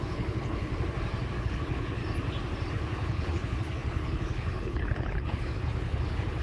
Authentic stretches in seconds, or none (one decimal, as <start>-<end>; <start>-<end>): 0.7-1.4; 2.0-2.7